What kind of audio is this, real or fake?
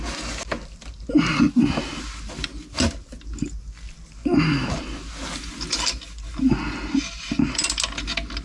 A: real